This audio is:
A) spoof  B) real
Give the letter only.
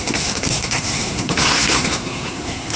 A